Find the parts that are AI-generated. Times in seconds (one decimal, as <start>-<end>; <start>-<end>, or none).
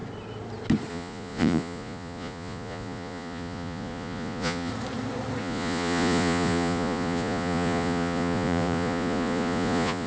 0.9-4.7; 5.4-10.1